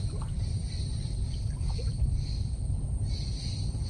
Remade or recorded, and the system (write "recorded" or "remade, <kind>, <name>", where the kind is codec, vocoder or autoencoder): remade, vocoder, BigVGAN v2